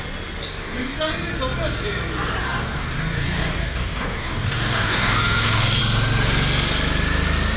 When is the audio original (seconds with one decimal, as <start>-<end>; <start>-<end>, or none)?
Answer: 0.0-0.5; 1.1-2.4; 5.8-7.6